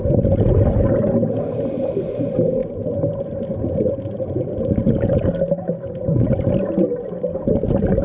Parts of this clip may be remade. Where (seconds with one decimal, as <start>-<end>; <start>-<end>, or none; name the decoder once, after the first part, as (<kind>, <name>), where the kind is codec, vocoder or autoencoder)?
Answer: none